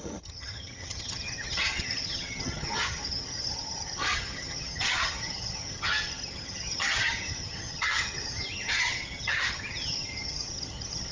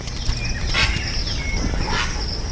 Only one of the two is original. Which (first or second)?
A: second